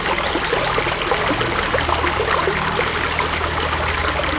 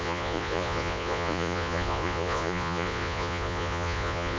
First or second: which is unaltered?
first